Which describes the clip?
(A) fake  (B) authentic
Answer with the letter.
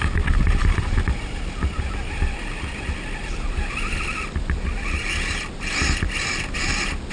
A